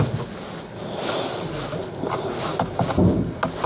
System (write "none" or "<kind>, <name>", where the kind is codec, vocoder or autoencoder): none